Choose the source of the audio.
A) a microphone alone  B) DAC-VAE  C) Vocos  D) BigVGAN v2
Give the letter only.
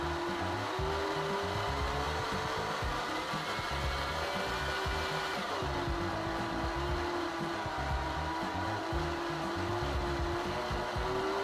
A